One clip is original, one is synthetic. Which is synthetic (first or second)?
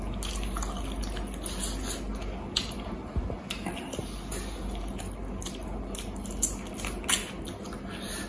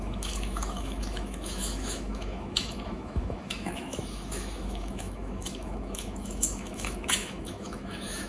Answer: second